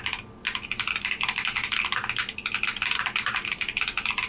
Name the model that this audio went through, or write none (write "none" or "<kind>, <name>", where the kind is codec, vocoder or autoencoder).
none